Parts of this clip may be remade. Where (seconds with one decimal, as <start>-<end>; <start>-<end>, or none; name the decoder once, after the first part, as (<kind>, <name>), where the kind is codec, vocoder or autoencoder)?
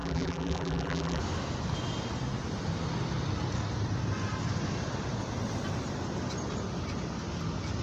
0.0-1.2 (vocoder, BigVGAN v2)